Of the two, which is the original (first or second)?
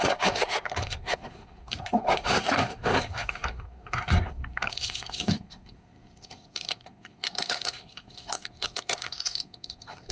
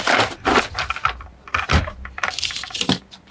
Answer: second